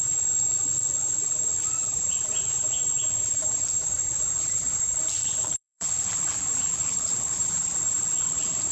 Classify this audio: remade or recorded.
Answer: remade